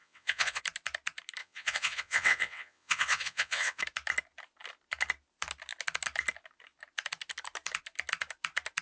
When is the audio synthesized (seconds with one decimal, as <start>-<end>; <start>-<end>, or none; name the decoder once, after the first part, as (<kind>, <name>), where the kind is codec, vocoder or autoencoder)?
0.0-0.6 (vocoder, WaveNeXt); 1.4-3.8

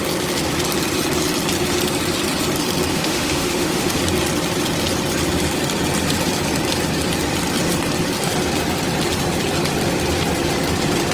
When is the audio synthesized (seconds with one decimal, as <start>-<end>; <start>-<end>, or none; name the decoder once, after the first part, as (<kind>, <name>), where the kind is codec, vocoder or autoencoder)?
2.9-4.0 (autoencoder, DAC-VAE)

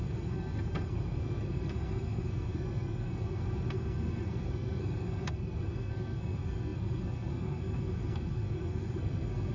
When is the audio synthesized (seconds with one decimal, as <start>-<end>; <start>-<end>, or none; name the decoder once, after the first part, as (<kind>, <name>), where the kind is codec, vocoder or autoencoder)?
0.0-9.5 (codec, SNAC)

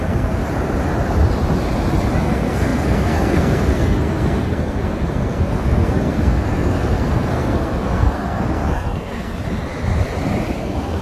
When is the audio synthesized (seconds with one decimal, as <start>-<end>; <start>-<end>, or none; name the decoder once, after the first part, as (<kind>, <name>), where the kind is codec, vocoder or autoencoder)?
0.0-0.4 (codec, SNAC); 2.2-9.3; 10.6-11.0

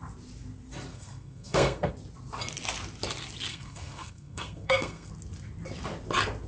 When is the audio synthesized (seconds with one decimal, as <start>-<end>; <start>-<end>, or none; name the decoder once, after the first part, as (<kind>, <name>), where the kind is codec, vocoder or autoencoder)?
0.9-1.9 (codec, SNAC); 3.5-5.1